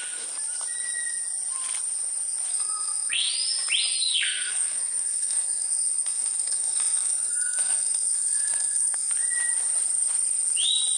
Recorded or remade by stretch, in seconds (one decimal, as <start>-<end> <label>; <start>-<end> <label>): 0.0-2.5 recorded; 2.5-3.3 remade; 3.3-4.0 recorded; 4.0-9.1 remade; 9.1-11.0 recorded